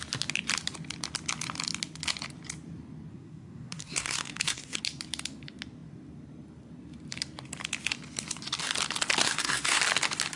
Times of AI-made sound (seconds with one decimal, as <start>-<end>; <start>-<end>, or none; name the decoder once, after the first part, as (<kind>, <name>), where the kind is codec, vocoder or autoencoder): 3.1-4.8 (codec, SNAC); 9.2-9.8